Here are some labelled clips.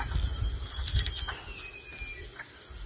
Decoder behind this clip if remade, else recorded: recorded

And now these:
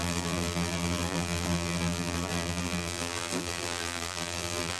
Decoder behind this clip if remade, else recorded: remade, vocoder, BigVGAN v2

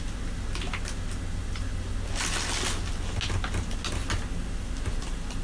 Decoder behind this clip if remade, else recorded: recorded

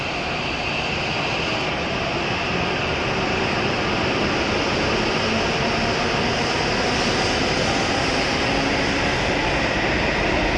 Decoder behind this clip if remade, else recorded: recorded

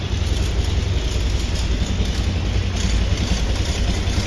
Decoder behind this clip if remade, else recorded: recorded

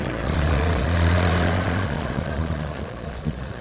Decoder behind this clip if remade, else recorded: remade, vocoder, Vocos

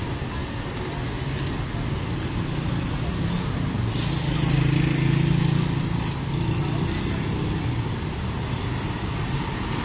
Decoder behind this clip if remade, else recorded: recorded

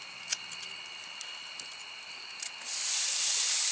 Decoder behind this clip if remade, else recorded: recorded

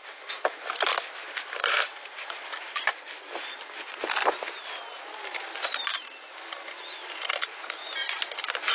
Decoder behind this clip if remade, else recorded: recorded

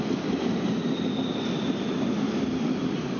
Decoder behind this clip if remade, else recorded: recorded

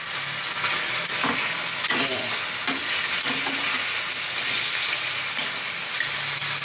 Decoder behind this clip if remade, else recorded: recorded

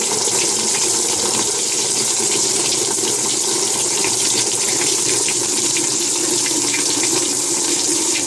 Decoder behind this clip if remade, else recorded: remade, vocoder, BigVGAN v2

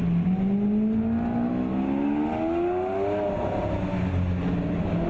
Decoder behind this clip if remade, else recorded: recorded